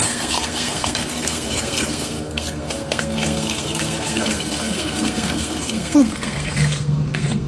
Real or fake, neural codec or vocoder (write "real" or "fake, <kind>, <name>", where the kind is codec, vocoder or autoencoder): fake, codec, SNAC